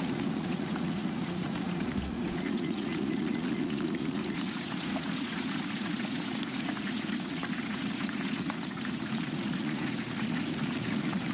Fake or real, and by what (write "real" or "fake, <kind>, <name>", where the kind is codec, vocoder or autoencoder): fake, vocoder, Vocos